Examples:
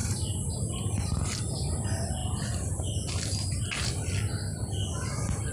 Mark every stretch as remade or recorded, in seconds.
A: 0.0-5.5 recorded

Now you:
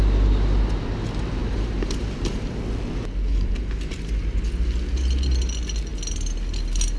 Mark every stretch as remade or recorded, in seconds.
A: 0.0-1.4 recorded; 1.4-2.6 remade; 2.6-3.3 recorded; 3.3-4.4 remade; 4.4-7.0 recorded

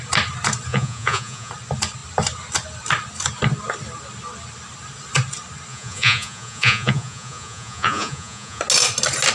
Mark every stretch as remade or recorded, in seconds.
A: 0.0-0.7 recorded; 0.7-1.5 remade; 1.5-5.7 recorded; 5.7-8.6 remade; 8.6-9.3 recorded

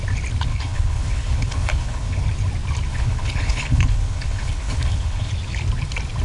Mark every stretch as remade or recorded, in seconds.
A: 0.0-0.5 recorded; 0.5-2.2 remade; 2.2-2.9 recorded; 2.9-5.3 remade; 5.3-6.2 recorded

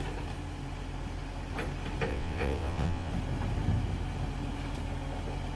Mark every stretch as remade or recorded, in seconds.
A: 0.0-2.1 recorded; 2.1-3.1 remade; 3.1-5.6 recorded